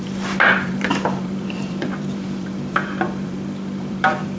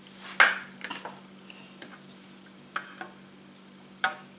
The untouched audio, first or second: second